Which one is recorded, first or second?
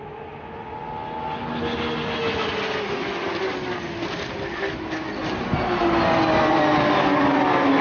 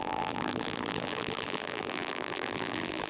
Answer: first